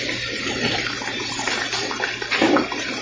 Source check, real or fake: real